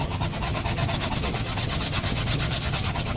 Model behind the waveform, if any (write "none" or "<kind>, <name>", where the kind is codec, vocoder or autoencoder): vocoder, HiFi-GAN